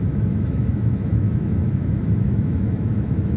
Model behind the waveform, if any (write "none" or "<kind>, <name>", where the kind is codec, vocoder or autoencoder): autoencoder, DAC-VAE